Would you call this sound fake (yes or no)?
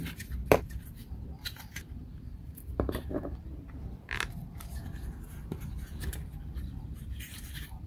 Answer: yes